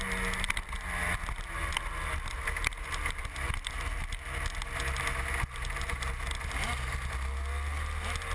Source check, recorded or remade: recorded